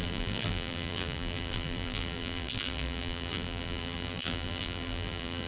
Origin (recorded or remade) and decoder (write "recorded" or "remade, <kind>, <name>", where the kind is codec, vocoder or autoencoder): remade, vocoder, BigVGAN v2